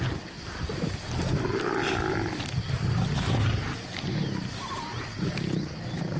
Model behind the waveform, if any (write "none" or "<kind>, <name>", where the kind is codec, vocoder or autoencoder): none